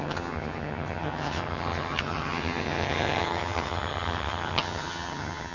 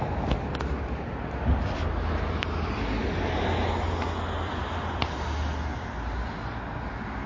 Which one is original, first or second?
second